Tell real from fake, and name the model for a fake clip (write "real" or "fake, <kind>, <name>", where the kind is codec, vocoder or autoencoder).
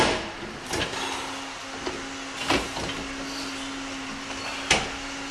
real